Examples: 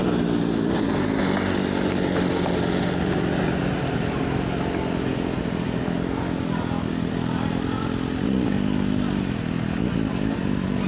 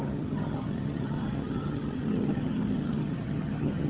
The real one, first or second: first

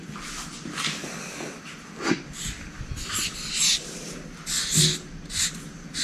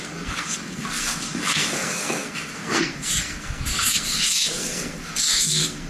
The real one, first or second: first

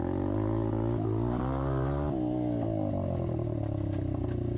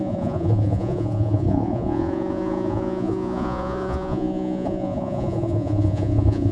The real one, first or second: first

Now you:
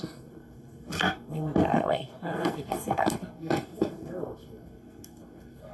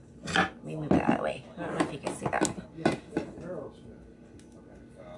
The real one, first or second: second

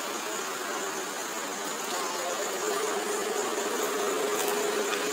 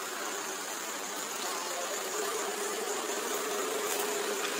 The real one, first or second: first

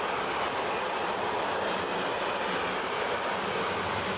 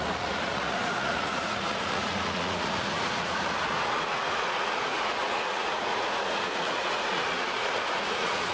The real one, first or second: first